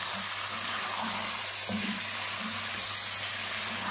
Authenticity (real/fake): real